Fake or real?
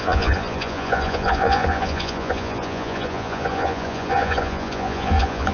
fake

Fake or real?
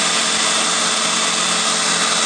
real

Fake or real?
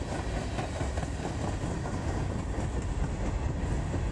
real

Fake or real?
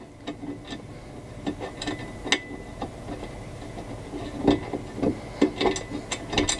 real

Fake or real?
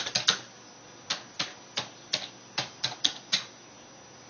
real